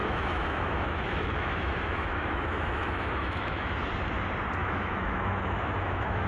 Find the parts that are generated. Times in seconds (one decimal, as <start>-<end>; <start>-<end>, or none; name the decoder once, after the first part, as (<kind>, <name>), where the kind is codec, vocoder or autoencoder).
0.0-3.7 (autoencoder, DAC-VAE); 4.6-6.3